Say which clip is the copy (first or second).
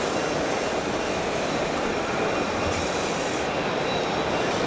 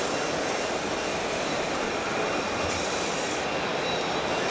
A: first